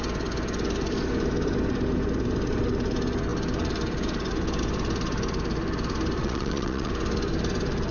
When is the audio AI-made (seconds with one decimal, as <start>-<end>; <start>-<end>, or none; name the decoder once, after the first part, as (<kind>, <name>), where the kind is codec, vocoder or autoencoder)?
6.2-6.9 (vocoder, WaveNeXt)